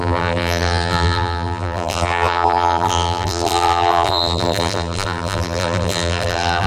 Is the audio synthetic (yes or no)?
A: yes